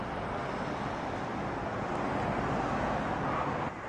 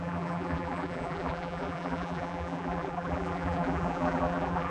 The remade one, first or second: second